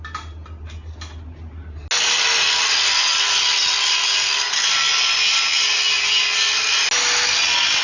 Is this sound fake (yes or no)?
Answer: no